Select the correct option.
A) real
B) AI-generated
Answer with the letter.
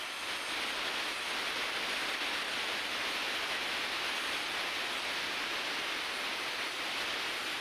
A